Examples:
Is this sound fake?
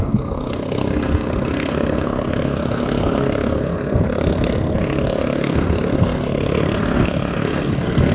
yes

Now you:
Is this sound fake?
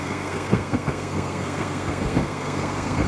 yes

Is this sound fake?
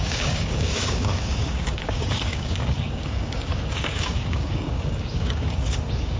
yes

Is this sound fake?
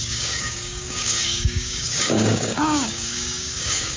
yes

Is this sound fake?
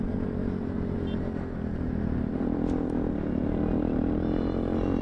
no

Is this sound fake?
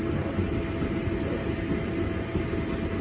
no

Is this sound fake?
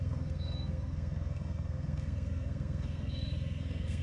yes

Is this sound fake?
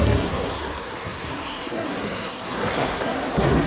yes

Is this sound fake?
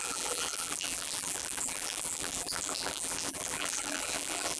yes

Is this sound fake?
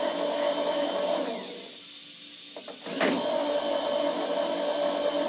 no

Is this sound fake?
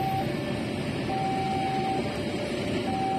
no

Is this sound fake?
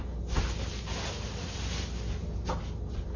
no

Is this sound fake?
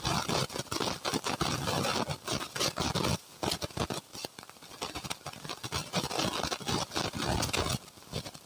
no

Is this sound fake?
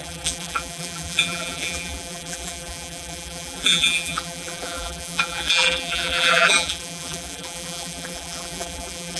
yes